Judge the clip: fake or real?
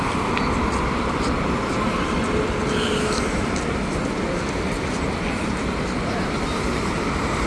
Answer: real